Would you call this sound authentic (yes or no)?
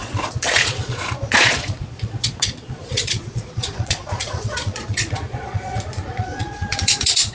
no